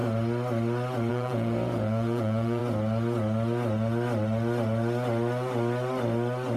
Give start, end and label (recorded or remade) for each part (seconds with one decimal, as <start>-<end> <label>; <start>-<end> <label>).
0.0-1.1 recorded; 1.1-2.6 remade; 2.6-6.6 recorded